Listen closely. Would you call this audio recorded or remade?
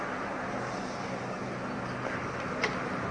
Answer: recorded